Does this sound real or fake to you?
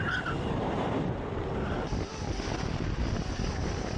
real